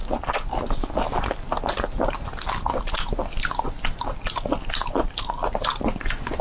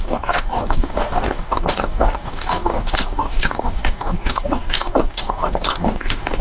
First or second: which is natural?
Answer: first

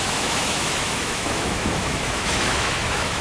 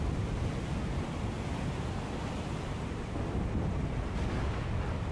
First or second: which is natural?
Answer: second